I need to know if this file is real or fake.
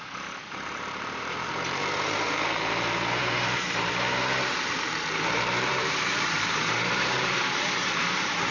fake